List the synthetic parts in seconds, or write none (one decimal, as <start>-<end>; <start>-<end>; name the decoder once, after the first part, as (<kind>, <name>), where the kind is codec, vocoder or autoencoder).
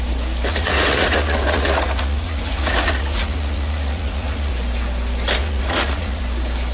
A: 0.5-4.5 (vocoder, Vocos); 5.4-6.2